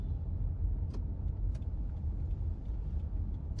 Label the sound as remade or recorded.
recorded